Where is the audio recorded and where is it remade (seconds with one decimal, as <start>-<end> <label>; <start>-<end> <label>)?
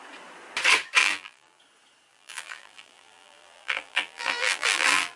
0.0-1.0 recorded; 1.0-1.6 remade; 1.6-2.1 recorded; 2.1-5.2 remade